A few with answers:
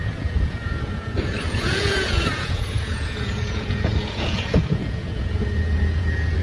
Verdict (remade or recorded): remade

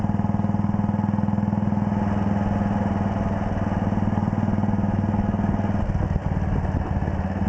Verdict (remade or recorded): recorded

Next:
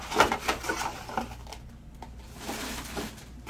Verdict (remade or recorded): recorded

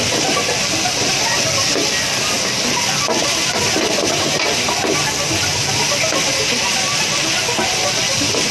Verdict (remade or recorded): recorded